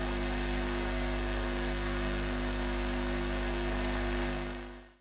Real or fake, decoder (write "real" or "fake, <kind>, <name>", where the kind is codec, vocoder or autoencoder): fake, codec, SNAC